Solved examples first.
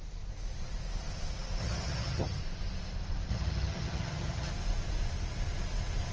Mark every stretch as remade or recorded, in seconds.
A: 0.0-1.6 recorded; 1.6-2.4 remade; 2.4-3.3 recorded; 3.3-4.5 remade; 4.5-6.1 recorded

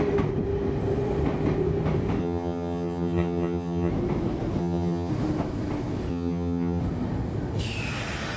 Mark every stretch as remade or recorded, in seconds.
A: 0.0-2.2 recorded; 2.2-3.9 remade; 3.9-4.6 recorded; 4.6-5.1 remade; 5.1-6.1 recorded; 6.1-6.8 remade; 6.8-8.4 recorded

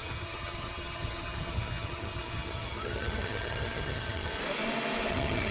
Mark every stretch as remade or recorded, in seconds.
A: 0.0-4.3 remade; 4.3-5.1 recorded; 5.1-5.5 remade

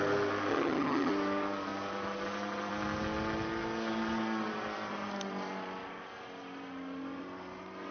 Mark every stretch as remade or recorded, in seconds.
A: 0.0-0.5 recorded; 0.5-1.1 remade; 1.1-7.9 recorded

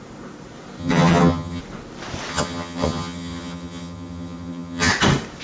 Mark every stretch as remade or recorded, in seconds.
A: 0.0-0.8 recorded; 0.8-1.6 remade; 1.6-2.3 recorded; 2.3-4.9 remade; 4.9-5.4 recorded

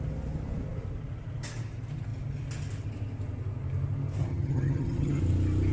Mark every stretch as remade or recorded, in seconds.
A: 0.0-4.2 recorded; 4.2-5.2 remade; 5.2-5.7 recorded

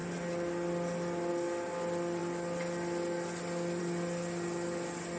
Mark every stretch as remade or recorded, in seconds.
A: 0.0-5.2 recorded

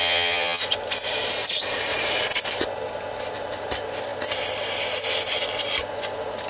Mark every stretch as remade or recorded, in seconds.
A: 0.0-0.6 remade; 0.6-6.5 recorded